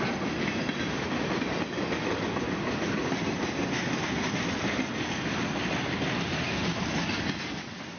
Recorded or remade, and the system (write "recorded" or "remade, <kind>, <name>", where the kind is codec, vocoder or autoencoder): recorded